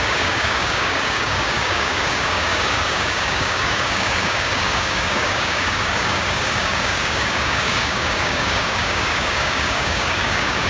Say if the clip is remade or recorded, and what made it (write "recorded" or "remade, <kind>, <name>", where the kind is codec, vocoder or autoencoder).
remade, codec, DAC